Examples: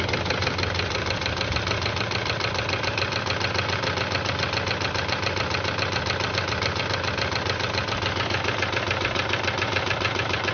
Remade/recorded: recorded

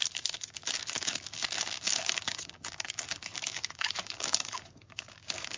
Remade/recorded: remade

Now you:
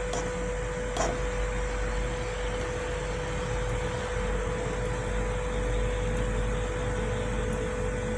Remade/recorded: recorded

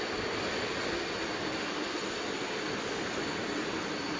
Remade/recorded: recorded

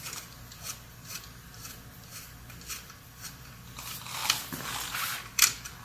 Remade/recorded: remade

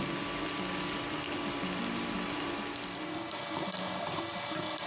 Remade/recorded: recorded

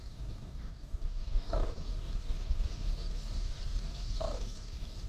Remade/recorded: remade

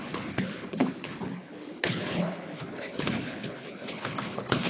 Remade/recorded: remade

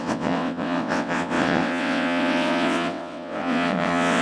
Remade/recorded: remade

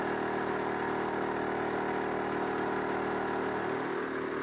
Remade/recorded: recorded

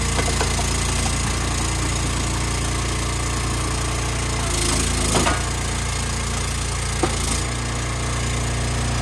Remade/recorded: recorded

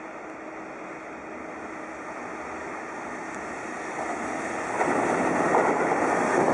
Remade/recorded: recorded